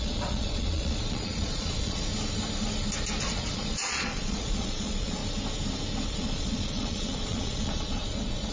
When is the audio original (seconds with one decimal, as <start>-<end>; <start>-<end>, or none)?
2.1-3.2; 5.2-6.1